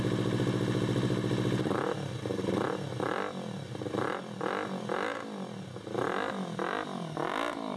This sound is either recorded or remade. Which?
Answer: recorded